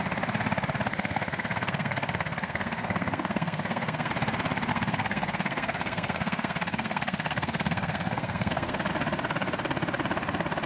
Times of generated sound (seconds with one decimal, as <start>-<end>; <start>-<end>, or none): 0.9-4.1; 4.7-8.9